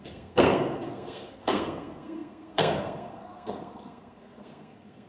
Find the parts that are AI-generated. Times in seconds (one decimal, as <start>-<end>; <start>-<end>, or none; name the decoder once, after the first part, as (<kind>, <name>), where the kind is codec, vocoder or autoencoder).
0.0-5.1 (codec, SNAC)